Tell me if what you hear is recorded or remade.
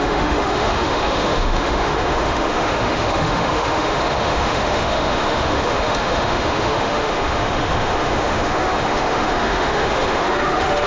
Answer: remade